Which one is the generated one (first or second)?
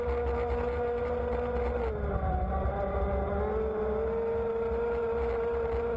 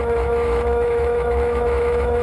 second